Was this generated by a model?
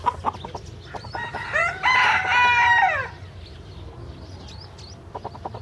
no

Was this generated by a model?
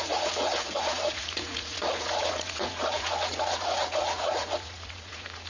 yes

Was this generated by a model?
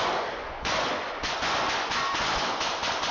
yes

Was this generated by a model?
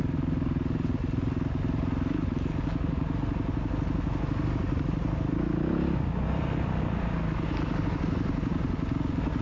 no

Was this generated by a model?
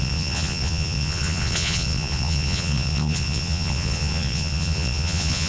yes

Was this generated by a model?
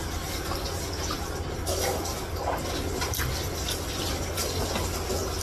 no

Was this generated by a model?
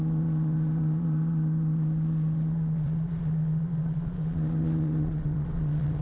yes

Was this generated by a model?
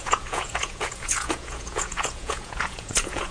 yes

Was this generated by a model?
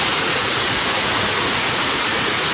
yes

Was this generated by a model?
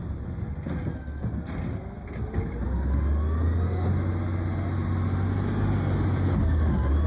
no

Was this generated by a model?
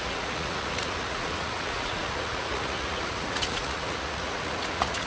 yes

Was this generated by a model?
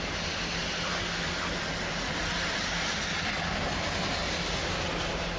no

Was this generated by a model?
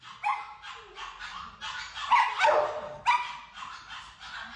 no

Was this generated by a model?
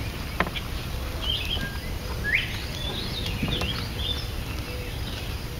no